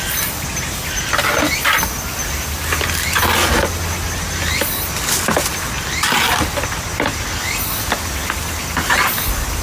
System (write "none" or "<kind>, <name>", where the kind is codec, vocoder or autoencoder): none